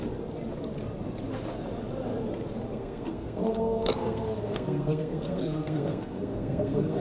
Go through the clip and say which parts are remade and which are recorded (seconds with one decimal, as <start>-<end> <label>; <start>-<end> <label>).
0.0-2.7 recorded; 2.7-7.0 remade